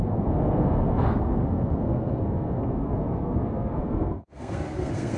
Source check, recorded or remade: remade